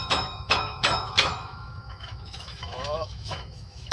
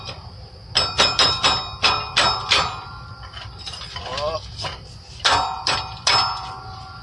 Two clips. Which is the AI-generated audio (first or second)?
first